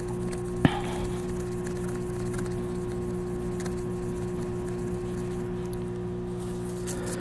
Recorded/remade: recorded